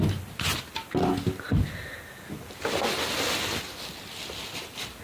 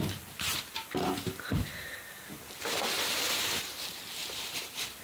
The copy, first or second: second